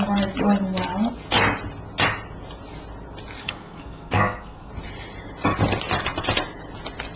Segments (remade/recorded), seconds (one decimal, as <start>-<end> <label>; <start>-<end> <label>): 0.0-3.4 recorded; 3.4-4.7 remade; 4.7-7.2 recorded